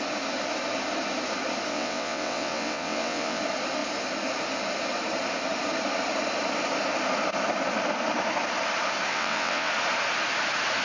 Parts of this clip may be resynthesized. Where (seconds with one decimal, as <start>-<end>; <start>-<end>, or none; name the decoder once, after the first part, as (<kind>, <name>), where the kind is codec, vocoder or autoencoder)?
1.7-3.4 (vocoder, WaveNeXt); 9.1-9.7